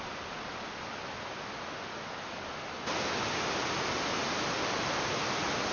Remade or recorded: recorded